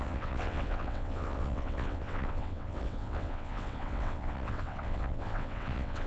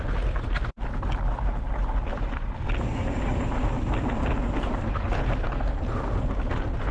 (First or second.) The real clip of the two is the second